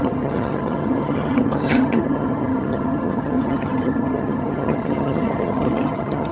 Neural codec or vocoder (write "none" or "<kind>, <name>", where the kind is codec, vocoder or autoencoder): vocoder, HiFi-GAN